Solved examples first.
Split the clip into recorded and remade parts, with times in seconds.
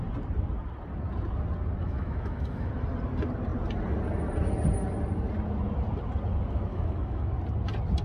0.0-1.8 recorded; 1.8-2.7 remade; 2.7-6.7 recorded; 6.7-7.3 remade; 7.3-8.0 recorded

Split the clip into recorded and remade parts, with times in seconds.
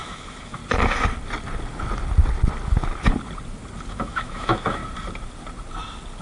0.0-0.6 remade; 0.6-3.9 recorded; 3.9-4.8 remade; 4.8-6.2 recorded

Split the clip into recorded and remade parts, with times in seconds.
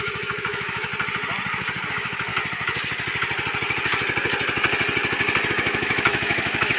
0.0-0.9 remade; 0.9-1.9 recorded; 1.9-2.3 remade; 2.3-5.5 recorded; 5.5-6.8 remade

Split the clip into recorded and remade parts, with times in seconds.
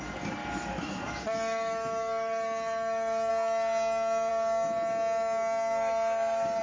0.0-0.4 recorded; 0.4-3.3 remade; 3.3-6.6 recorded